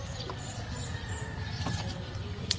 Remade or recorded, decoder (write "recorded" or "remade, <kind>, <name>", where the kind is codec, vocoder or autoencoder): remade, vocoder, BigVGAN v2